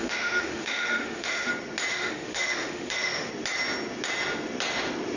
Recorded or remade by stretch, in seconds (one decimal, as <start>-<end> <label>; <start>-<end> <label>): 0.0-1.5 remade; 1.5-1.9 recorded; 1.9-3.3 remade; 3.3-5.2 recorded